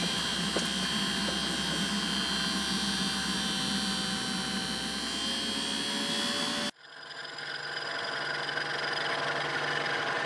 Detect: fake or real real